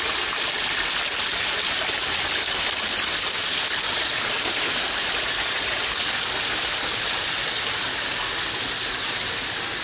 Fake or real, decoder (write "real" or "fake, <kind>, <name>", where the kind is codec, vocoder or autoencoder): real